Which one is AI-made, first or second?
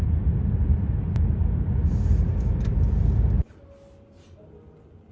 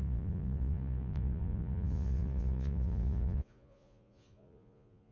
second